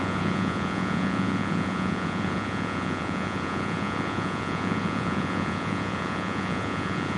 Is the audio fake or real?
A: fake